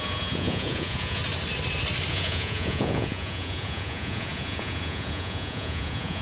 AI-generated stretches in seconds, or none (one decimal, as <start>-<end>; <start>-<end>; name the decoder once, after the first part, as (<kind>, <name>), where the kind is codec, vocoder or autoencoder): 0.0-1.2 (vocoder, Vocos); 2.1-6.2